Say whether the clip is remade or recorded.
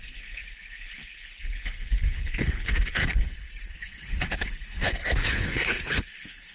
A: remade